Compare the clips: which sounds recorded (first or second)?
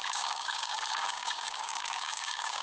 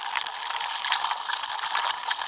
second